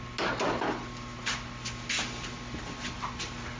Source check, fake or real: real